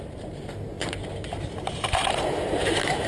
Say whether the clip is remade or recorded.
remade